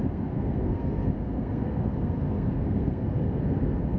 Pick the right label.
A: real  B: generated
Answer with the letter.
B